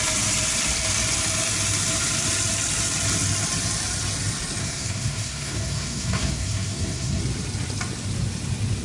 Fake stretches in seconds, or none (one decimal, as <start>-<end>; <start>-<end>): 4.6-7.2